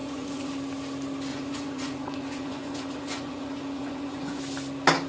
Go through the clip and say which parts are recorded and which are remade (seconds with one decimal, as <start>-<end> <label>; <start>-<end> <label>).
0.0-0.5 remade; 0.5-1.3 recorded; 1.3-4.4 remade; 4.4-5.1 recorded

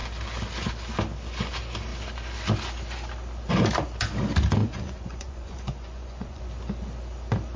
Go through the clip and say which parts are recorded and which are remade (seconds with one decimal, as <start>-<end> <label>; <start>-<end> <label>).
0.0-4.6 recorded; 4.6-6.4 remade; 6.4-7.6 recorded